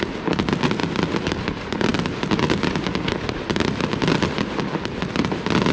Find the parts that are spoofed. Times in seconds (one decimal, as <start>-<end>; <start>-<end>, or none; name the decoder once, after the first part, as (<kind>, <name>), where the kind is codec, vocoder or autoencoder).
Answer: none